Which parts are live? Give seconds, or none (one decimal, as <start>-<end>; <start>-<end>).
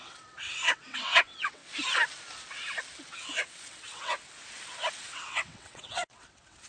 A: 1.6-3.0; 4.1-4.9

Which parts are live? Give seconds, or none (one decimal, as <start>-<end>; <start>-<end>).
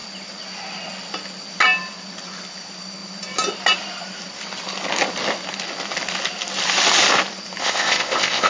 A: 0.0-7.6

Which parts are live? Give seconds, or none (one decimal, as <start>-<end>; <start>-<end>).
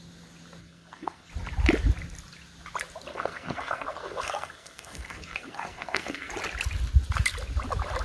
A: 0.0-0.6; 1.3-3.1; 6.3-8.0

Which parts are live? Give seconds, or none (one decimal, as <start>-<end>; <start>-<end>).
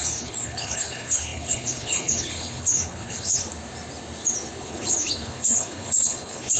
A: 3.5-4.6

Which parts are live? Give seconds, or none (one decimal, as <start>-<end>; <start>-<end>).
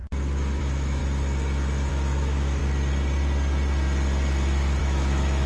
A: 0.0-0.6; 1.0-1.9; 2.6-4.8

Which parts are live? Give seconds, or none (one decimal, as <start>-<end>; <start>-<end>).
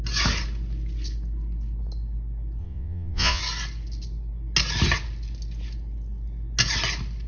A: 0.0-2.6; 3.4-7.3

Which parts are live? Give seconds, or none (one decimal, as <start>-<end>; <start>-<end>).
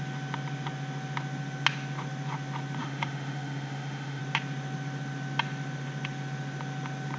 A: 0.0-2.8; 4.2-7.2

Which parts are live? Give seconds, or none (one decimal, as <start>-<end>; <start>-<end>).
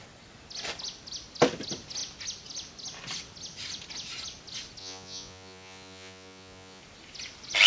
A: 0.0-4.8; 6.8-7.7